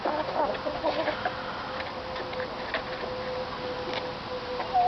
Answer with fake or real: real